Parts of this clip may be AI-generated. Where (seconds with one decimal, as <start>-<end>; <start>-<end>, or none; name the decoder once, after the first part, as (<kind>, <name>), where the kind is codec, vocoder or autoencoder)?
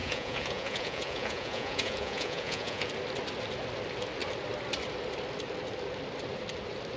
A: 0.0-2.9 (vocoder, Vocos)